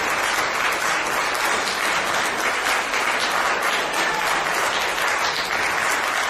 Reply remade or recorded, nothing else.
recorded